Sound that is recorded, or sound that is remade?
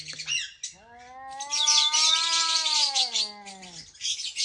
recorded